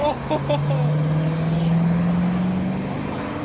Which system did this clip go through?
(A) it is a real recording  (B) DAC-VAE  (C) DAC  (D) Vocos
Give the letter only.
A